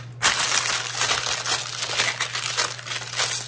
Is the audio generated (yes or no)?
no